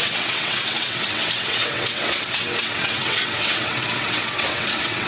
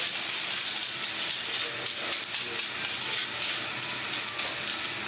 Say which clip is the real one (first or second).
second